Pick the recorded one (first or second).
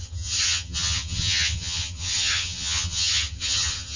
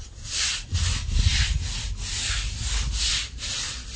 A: second